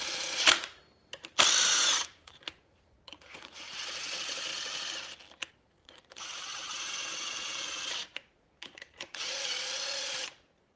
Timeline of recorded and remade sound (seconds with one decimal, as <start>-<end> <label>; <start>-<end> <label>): 0.0-0.8 remade; 0.8-1.7 recorded; 1.7-4.5 remade; 4.5-5.5 recorded; 5.5-10.8 remade